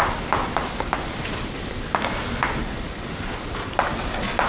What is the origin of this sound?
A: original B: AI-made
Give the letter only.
A